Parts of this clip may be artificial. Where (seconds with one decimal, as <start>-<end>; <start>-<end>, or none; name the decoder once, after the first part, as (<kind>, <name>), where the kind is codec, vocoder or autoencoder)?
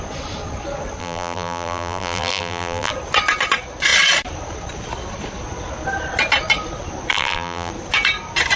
1.0-2.9 (vocoder, BigVGAN v2); 7.1-7.7